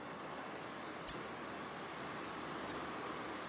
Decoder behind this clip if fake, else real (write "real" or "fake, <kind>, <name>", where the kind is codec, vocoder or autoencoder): real